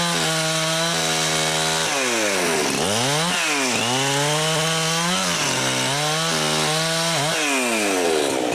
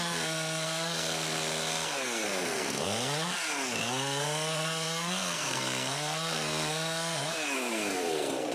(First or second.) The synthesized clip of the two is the second